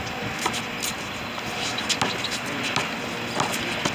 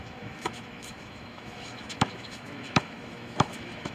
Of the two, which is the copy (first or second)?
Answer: second